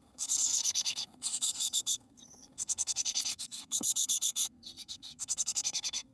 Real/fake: fake